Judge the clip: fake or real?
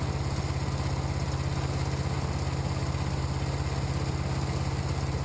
real